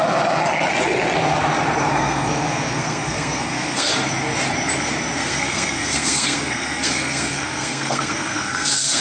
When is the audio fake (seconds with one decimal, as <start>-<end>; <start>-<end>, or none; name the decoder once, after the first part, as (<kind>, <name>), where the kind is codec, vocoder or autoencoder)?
1.9-3.9 (codec, SNAC); 5.2-9.0